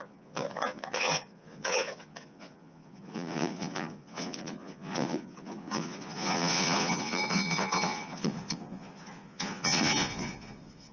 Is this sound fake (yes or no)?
yes